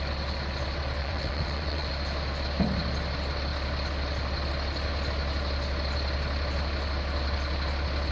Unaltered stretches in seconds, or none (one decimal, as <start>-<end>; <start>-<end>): 0.0-1.0; 1.9-8.1